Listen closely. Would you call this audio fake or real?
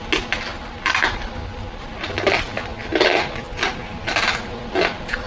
real